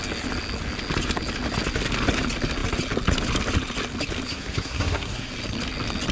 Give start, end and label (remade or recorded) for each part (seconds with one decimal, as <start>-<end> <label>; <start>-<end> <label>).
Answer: 0.0-4.3 recorded; 4.3-5.3 remade; 5.3-6.1 recorded